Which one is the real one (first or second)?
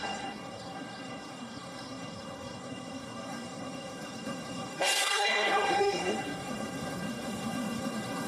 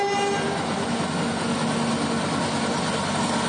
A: second